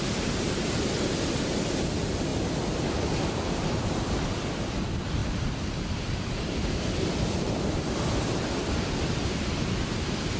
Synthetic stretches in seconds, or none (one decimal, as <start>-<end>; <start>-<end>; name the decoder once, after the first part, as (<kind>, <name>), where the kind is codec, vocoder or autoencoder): 2.3-4.7 (vocoder, BigVGAN v2); 5.2-9.9